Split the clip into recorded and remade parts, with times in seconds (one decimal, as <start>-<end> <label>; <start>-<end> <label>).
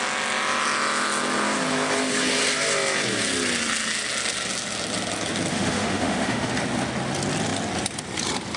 0.0-5.5 recorded; 5.5-6.5 remade; 6.5-8.6 recorded